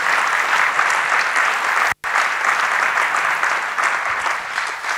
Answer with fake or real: real